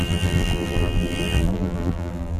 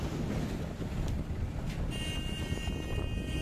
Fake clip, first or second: first